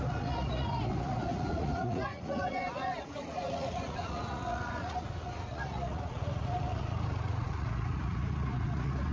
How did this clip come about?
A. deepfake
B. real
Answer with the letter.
A